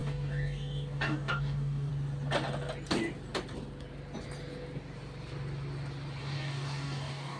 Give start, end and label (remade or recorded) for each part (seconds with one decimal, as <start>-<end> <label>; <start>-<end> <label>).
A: 0.0-1.9 remade; 1.9-6.2 recorded; 6.2-7.4 remade